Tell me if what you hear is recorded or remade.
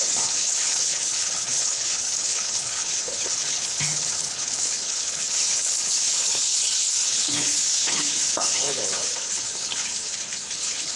remade